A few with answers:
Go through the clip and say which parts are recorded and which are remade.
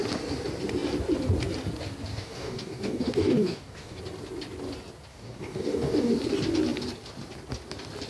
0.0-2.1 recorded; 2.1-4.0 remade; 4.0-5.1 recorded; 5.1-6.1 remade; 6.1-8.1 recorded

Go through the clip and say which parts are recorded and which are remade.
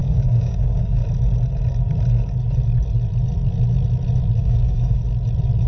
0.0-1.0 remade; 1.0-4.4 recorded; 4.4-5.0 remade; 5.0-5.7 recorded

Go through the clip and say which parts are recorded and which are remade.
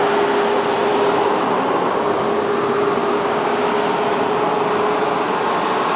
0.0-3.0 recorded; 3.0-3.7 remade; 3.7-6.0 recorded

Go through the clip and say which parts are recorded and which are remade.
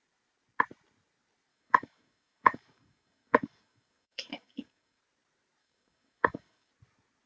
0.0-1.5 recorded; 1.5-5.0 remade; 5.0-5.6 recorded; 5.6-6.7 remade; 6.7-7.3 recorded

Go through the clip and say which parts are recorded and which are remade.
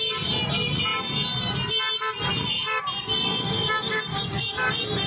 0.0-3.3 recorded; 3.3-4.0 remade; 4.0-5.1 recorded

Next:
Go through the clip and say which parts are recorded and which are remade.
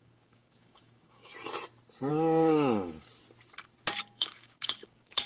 0.0-1.3 remade; 1.3-2.1 recorded; 2.1-3.1 remade; 3.1-4.0 recorded; 4.0-5.3 remade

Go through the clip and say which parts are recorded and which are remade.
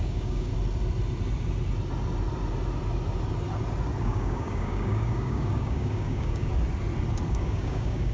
0.0-0.5 remade; 0.5-4.0 recorded; 4.0-6.5 remade; 6.5-7.3 recorded; 7.3-8.1 remade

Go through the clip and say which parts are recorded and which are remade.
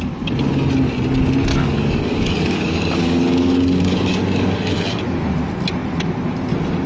0.0-1.5 recorded; 1.5-5.0 remade; 5.0-6.9 recorded